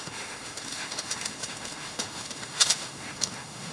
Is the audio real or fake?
fake